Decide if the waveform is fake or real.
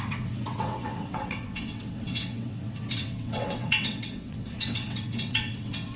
fake